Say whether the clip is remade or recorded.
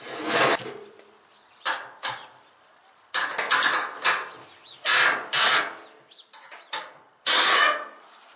recorded